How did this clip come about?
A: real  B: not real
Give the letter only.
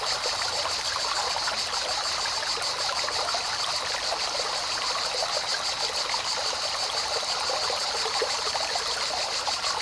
A